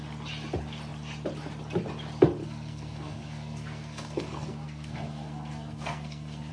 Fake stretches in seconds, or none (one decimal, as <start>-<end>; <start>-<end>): 2.4-6.5